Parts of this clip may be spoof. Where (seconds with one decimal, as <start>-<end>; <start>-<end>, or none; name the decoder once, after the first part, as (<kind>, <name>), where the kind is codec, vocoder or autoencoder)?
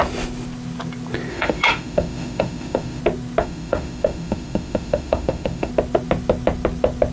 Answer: 1.3-3.0 (autoencoder, DAC-VAE); 3.4-5.7